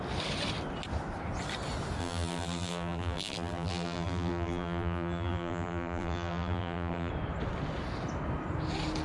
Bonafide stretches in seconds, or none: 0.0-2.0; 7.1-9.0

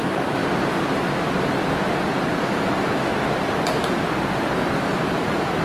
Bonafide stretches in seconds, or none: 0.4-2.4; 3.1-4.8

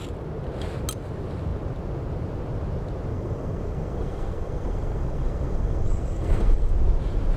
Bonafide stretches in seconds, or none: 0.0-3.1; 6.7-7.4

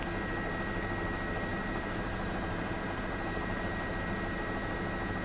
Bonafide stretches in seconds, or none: 0.0-1.5; 3.9-5.2